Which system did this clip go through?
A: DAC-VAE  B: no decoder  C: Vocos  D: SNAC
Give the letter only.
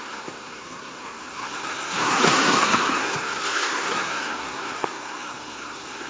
D